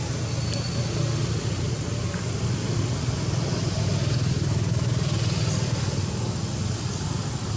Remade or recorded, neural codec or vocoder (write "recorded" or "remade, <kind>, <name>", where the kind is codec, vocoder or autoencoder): recorded